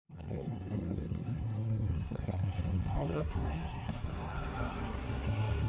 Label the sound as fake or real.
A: fake